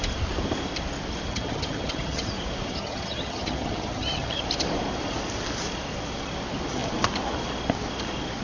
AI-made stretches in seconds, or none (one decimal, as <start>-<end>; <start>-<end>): 1.3-2.3; 2.7-4.4